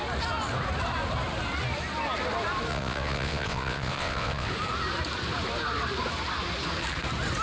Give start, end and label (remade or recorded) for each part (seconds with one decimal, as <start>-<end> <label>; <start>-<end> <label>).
0.0-2.7 recorded; 2.7-4.5 remade; 4.5-7.4 recorded